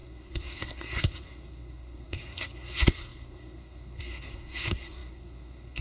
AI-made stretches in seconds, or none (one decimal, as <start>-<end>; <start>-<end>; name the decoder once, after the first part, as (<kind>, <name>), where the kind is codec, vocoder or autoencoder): 0.0-5.8 (codec, SNAC)